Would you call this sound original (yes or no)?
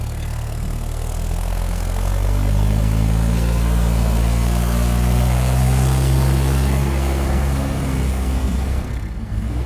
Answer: no